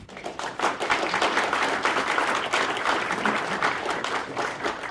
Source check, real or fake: fake